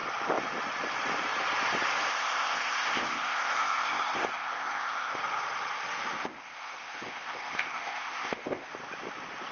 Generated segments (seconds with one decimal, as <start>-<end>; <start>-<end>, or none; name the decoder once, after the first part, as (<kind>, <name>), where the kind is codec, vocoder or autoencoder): 2.1-5.2 (codec, ZipCodec); 6.2-8.7